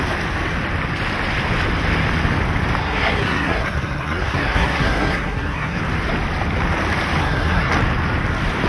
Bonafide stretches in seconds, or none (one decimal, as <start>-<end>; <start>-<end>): 0.0-2.8; 5.8-7.2; 7.7-8.7